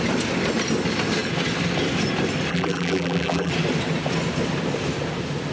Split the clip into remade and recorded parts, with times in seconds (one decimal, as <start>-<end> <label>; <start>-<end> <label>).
0.0-2.5 recorded; 2.5-3.5 remade; 3.5-5.5 recorded